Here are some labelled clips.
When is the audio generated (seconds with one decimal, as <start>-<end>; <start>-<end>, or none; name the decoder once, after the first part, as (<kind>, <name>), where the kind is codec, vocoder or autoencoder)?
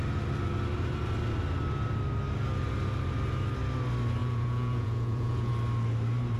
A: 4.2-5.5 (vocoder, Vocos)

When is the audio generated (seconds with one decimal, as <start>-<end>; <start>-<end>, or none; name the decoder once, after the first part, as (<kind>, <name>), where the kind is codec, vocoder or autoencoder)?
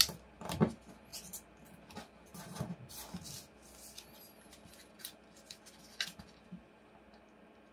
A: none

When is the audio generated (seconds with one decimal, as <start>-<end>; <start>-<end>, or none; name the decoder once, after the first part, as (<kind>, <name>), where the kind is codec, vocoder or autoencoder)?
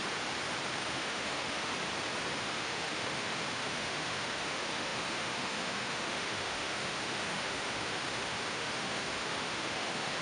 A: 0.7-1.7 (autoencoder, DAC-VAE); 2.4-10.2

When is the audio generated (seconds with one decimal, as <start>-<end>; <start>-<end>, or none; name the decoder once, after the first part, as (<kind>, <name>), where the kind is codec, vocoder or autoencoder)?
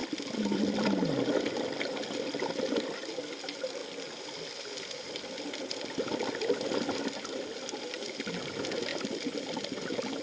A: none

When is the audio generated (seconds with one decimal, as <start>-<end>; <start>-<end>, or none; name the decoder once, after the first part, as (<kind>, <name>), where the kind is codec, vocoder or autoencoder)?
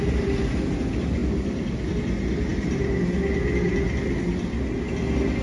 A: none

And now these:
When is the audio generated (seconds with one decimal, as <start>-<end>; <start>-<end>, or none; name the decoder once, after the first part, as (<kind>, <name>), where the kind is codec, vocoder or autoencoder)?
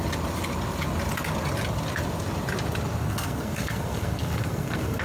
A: 3.0-5.0 (codec, SNAC)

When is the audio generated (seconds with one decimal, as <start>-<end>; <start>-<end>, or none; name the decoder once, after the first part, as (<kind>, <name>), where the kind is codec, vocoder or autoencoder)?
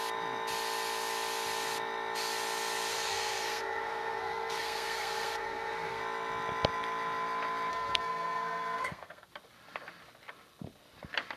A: 2.9-6.0 (codec, SNAC); 7.7-9.3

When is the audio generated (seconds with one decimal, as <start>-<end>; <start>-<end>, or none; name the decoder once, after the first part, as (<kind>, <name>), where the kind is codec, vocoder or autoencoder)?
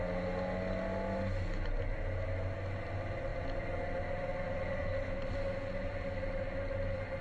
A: none